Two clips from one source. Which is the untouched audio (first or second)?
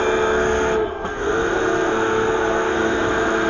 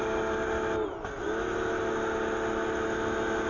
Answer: second